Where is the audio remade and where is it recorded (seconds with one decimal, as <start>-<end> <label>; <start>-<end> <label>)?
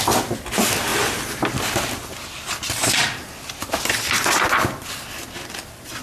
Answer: 0.0-6.0 recorded